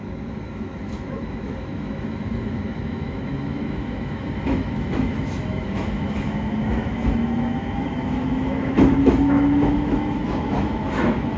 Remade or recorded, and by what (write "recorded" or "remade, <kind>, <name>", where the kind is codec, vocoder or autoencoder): remade, autoencoder, DAC-VAE